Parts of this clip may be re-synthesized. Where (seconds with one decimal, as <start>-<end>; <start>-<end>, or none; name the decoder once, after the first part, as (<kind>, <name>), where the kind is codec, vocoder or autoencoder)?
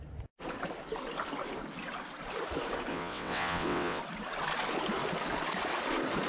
2.9-4.0 (vocoder, WaveNeXt)